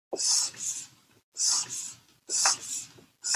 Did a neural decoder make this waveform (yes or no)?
no